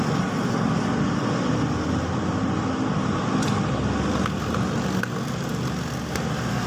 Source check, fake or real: real